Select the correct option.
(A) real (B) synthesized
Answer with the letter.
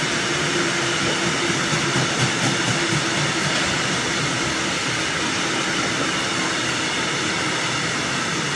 B